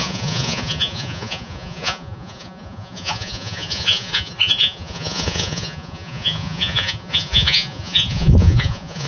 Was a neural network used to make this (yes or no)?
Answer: yes